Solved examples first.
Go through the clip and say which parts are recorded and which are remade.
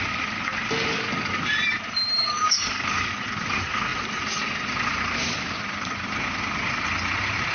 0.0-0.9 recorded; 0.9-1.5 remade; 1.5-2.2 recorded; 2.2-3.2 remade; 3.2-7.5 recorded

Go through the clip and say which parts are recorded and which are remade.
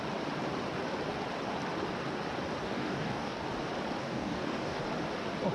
0.0-2.6 recorded; 2.6-3.4 remade; 3.4-4.0 recorded; 4.0-4.8 remade; 4.8-5.5 recorded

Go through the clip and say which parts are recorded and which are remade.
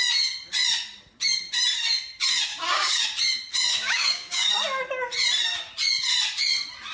0.0-2.5 recorded; 2.5-3.0 remade; 3.0-3.7 recorded; 3.7-4.5 remade; 4.5-6.9 recorded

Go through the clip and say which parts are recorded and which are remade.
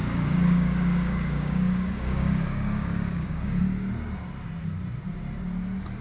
0.0-3.6 remade; 3.6-6.0 recorded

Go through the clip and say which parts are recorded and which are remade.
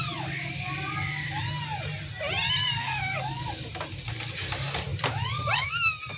0.0-2.6 recorded; 2.6-3.4 remade; 3.4-6.2 recorded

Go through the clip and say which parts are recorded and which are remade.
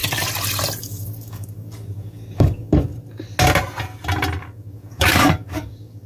0.0-0.8 recorded; 0.8-2.9 remade; 2.9-4.4 recorded; 4.4-6.1 remade